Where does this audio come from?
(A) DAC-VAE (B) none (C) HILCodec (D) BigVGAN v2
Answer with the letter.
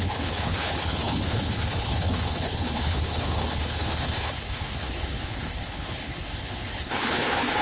C